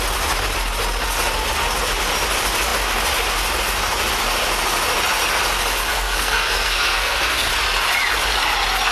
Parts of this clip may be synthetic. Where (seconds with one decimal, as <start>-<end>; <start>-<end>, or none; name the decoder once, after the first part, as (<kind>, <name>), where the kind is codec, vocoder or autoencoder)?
5.9-7.5 (codec, SNAC)